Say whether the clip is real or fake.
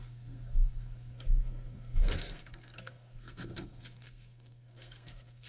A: fake